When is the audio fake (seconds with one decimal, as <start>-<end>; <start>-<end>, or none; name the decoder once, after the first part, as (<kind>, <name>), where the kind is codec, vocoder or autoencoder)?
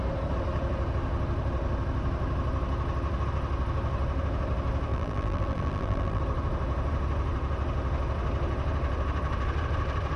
4.9-6.2 (vocoder, BigVGAN v2)